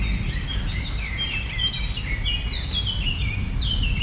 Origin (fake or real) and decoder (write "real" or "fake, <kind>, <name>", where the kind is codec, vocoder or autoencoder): real